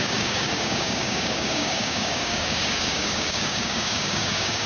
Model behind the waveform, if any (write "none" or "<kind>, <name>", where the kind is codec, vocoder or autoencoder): codec, DAC